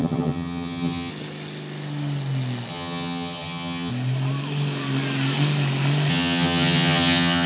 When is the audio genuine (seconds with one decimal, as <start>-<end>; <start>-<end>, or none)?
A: 1.1-2.7; 3.9-6.1